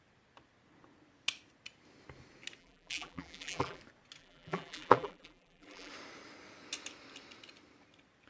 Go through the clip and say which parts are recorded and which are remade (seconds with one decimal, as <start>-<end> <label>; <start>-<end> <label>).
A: 0.0-2.6 recorded; 2.6-3.8 remade; 3.8-4.2 recorded; 4.2-5.9 remade; 5.9-8.3 recorded